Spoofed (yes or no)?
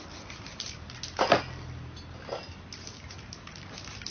no